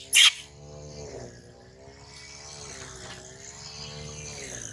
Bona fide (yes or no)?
yes